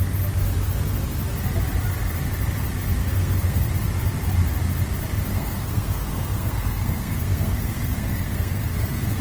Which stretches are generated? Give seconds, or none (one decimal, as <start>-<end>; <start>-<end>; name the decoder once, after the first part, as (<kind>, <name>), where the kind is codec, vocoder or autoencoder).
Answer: 3.0-3.7 (codec, SNAC); 5.3-9.2